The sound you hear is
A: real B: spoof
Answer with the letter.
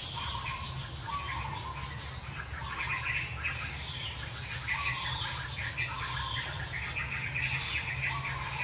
A